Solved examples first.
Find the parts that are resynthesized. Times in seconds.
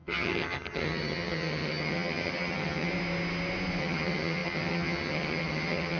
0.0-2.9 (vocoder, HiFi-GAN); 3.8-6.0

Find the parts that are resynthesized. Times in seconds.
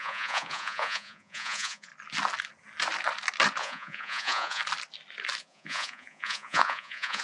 0.0-1.9 (vocoder, Vocos); 3.6-4.6; 5.4-7.2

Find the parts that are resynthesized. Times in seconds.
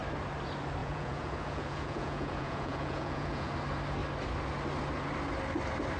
0.8-3.5 (vocoder, Vocos)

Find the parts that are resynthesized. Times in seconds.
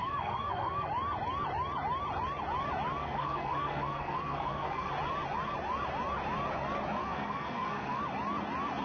0.0-0.9 (codec, SNAC); 3.0-4.9; 7.0-8.0